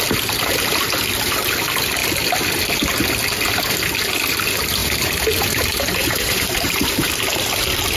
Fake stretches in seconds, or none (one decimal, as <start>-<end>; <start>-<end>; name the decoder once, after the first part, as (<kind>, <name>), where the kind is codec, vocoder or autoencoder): 4.8-7.1 (vocoder, BigVGAN v2)

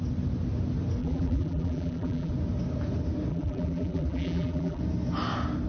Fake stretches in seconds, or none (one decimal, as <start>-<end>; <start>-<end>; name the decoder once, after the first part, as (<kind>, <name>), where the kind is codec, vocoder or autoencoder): 1.0-2.3 (vocoder, BigVGAN v2); 3.3-4.8

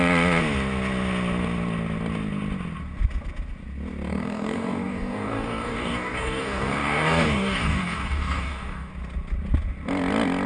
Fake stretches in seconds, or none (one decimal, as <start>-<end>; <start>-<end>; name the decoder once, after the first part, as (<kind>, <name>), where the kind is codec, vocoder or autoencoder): 4.1-8.9 (codec, DAC)

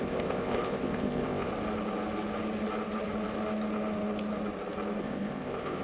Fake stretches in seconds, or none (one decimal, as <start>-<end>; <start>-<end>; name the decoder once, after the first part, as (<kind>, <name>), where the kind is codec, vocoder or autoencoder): 0.0-1.5 (codec, ZipCodec); 5.0-5.8

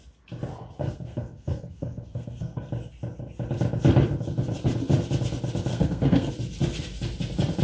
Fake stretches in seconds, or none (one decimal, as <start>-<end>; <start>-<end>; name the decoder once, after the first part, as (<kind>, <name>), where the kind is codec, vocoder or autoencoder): 0.8-2.7 (codec, SNAC); 5.7-6.3